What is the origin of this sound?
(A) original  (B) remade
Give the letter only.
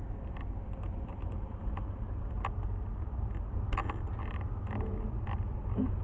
A